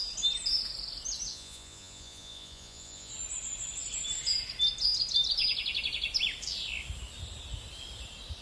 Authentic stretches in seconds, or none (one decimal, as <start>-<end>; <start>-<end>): 0.0-1.3; 3.1-8.4